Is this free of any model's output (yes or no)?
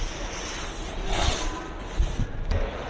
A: yes